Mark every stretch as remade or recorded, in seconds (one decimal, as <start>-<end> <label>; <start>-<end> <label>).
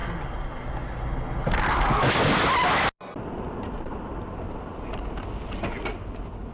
0.0-6.5 recorded